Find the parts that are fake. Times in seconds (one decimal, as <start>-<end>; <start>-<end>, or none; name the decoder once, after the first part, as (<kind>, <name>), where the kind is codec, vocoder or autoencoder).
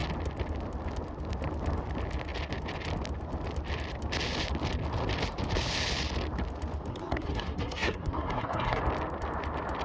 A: 6.9-8.8 (codec, SNAC)